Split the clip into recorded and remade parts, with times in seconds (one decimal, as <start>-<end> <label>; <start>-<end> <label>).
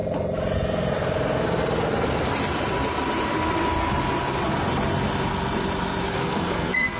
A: 0.0-6.1 recorded; 6.1-7.0 remade